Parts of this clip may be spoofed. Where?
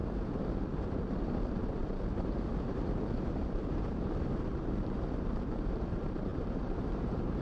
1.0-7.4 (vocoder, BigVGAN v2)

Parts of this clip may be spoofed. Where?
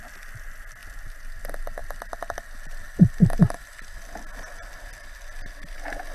none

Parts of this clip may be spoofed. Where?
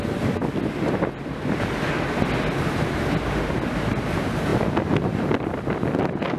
none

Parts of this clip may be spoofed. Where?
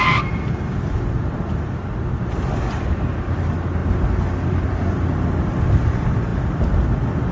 none